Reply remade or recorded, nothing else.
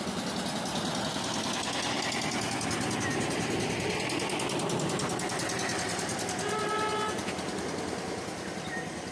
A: recorded